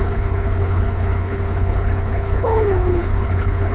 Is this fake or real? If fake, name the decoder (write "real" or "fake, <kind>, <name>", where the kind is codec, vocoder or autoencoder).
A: fake, codec, HILCodec